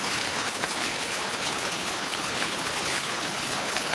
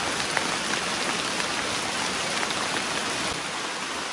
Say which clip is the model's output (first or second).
first